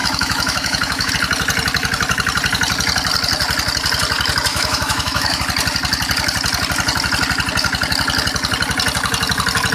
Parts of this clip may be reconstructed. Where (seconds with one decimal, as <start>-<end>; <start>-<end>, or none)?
0.0-1.1; 4.5-5.4